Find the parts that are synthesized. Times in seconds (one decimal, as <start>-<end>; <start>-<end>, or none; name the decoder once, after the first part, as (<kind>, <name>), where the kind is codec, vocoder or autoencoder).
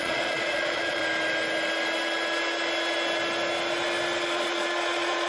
0.0-1.0 (vocoder, Vocos); 4.2-5.3